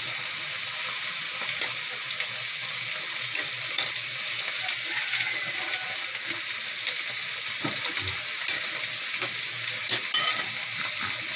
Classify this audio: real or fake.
real